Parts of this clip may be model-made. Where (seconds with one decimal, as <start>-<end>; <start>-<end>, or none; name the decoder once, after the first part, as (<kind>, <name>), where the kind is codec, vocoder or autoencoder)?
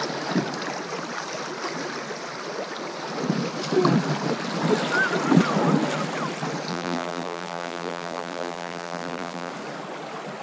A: 6.7-9.5 (vocoder, BigVGAN v2)